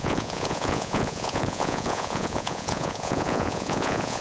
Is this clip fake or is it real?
fake